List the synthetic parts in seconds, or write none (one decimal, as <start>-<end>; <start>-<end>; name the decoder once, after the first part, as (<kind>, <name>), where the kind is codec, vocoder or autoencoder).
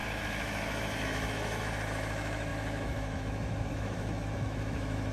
0.0-5.1 (autoencoder, DAC-VAE)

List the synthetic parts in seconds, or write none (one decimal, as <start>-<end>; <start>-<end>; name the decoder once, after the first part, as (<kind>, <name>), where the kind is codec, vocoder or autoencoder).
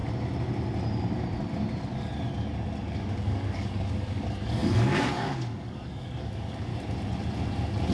2.8-6.7 (codec, DAC)